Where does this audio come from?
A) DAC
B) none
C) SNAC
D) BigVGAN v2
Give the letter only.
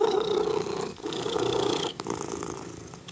A